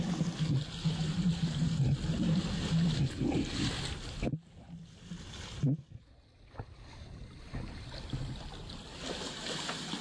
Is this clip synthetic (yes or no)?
no